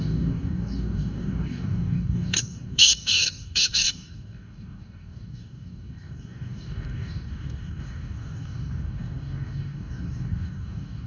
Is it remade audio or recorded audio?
remade